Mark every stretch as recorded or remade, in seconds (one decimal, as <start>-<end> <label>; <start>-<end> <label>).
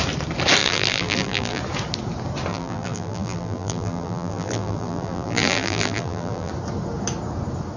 0.0-0.6 recorded; 0.6-1.6 remade; 1.6-2.5 recorded; 2.5-6.5 remade; 6.5-7.8 recorded